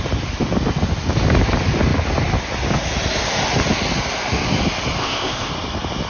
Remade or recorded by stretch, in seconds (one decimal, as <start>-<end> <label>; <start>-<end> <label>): 0.0-5.0 recorded; 5.0-5.5 remade; 5.5-6.1 recorded